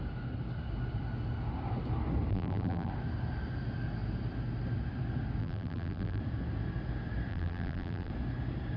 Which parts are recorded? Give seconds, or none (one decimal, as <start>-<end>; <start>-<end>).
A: 0.0-2.3; 2.9-5.4; 6.2-7.3; 8.1-8.8